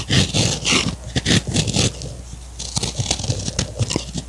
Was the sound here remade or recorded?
recorded